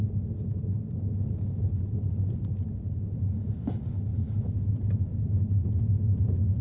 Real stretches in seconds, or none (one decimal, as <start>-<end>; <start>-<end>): 0.0-6.6